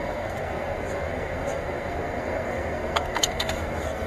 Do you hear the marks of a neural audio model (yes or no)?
yes